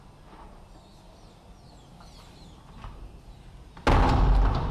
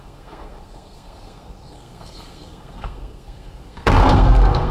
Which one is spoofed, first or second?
second